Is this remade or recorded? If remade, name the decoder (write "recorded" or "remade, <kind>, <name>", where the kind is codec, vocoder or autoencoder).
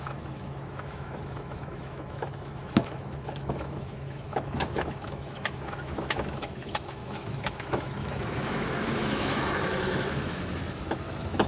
remade, autoencoder, DAC-VAE